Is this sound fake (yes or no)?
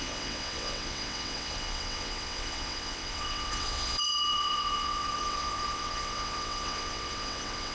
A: yes